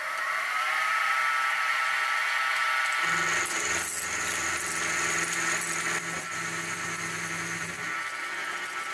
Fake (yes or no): no